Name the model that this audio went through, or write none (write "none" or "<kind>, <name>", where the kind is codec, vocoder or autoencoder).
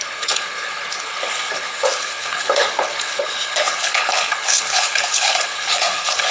codec, HILCodec